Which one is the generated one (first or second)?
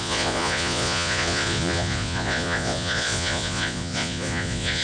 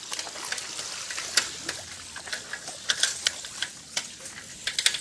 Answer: first